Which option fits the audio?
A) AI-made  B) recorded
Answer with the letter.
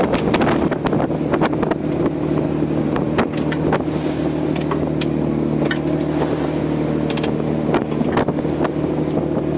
B